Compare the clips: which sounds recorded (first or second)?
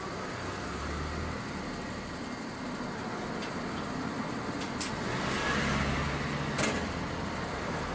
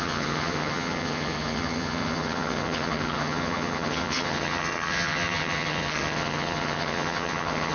first